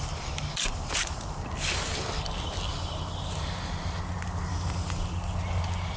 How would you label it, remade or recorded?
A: recorded